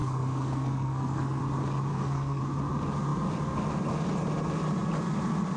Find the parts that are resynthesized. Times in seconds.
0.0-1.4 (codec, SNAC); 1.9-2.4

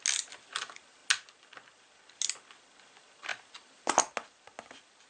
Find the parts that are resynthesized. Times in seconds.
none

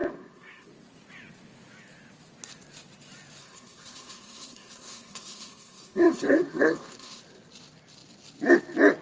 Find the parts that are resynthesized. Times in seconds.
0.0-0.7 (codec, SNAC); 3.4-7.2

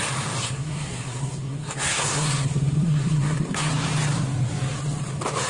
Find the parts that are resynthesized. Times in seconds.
0.4-3.7 (codec, SNAC)

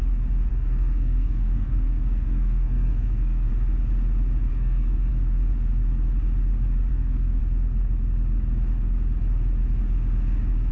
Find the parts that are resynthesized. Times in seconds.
0.5-3.5 (codec, SNAC); 4.5-5.1; 6.9-7.4